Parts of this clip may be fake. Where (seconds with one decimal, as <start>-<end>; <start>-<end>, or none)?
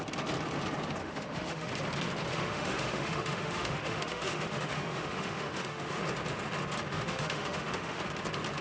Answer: 1.0-1.7; 2.3-6.0; 6.9-8.0